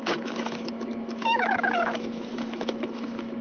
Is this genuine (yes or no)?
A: no